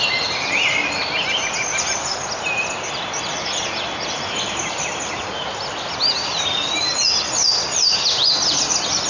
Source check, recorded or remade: recorded